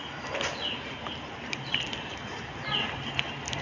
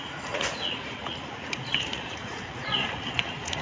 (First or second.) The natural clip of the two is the first